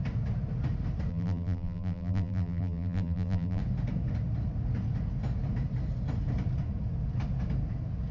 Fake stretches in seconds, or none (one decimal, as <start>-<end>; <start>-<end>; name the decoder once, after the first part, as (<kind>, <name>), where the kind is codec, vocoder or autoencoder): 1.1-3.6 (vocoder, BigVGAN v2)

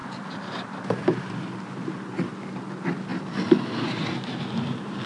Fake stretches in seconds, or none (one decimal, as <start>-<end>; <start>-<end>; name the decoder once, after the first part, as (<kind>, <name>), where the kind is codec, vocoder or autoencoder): 0.0-1.5 (vocoder, BigVGAN v2); 3.1-5.1

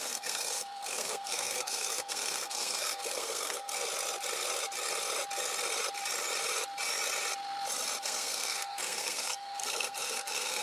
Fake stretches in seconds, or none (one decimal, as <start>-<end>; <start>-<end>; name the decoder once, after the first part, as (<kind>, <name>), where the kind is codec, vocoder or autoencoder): 0.0-3.7 (codec, SNAC); 8.0-10.6

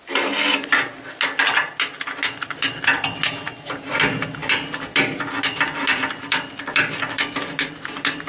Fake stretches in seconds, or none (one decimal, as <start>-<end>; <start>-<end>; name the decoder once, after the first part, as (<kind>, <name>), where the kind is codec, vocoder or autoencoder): none